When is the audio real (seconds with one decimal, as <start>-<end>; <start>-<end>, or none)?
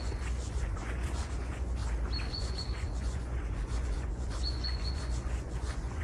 1.8-2.3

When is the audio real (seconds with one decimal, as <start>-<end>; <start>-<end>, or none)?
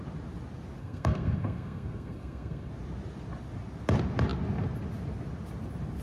0.0-0.8; 2.7-6.0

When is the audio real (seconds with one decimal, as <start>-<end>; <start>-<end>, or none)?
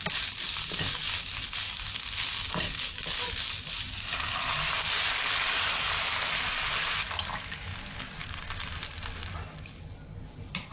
0.0-10.7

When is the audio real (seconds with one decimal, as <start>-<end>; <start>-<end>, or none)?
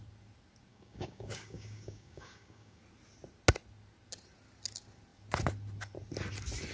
0.0-0.7; 2.8-6.7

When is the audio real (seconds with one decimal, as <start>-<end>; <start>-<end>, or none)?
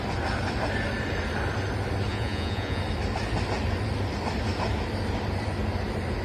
0.0-2.1; 2.8-6.2